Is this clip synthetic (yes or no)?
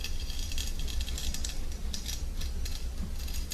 no